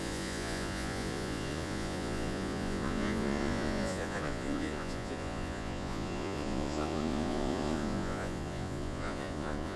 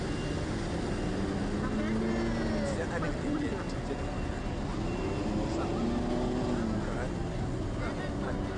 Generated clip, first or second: first